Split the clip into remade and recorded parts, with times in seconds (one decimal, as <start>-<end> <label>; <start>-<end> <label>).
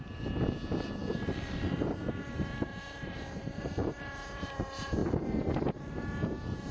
0.0-6.7 recorded